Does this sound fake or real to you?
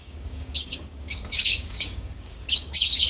fake